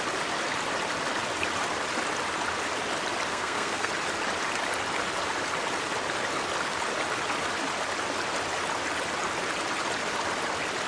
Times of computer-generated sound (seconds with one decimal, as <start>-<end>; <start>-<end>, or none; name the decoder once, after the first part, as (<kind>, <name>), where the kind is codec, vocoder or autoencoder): 3.3-3.9 (codec, SNAC)

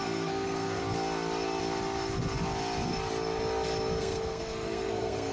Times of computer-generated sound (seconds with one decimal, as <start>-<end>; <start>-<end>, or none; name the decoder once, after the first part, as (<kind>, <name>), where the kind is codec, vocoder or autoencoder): 0.0-0.8 (codec, SNAC); 4.0-5.3

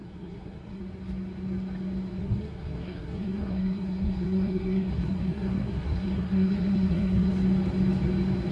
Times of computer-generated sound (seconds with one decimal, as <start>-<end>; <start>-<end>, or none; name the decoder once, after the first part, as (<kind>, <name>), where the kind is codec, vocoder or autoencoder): 0.0-0.8 (codec, SNAC); 2.2-7.3

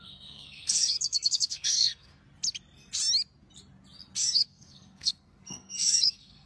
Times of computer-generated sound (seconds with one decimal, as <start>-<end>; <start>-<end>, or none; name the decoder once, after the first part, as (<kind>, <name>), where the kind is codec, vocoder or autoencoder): 0.0-2.2 (codec, SNAC); 4.2-6.5

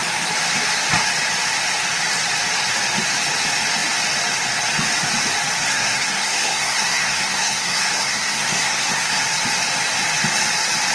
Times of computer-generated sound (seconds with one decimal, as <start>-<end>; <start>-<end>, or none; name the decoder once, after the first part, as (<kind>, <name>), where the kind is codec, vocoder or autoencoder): 5.7-9.2 (codec, SNAC)

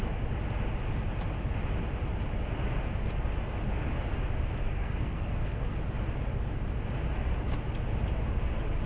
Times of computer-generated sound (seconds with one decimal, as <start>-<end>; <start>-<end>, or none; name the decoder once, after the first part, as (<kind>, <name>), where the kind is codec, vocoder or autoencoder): 4.6-5.8 (codec, SNAC)

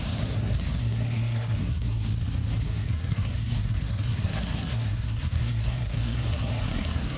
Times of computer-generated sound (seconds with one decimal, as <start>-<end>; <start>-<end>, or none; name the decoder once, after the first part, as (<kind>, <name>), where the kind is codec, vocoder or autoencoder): 0.0-2.1 (codec, SNAC); 2.6-7.2